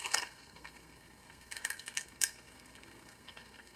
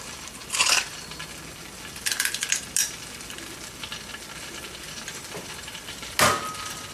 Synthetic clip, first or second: first